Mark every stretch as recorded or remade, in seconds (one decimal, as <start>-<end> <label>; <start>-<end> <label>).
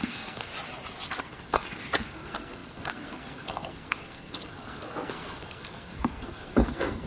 0.0-0.5 remade; 0.5-1.2 recorded; 1.2-7.1 remade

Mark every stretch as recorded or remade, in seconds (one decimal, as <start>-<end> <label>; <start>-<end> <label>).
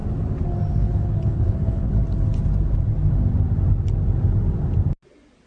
0.0-0.7 recorded; 0.7-2.0 remade; 2.0-5.5 recorded